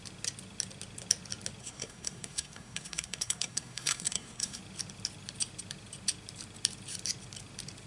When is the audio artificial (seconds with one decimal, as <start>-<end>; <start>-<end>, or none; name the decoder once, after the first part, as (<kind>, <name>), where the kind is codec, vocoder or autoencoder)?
1.6-4.6 (codec, SNAC)